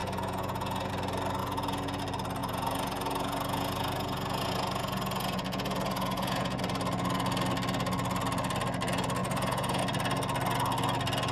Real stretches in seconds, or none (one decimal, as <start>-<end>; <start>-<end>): 0.9-1.4; 2.0-2.4; 6.6-9.2; 9.8-11.3